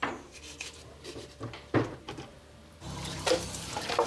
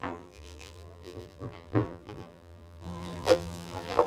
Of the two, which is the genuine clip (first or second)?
first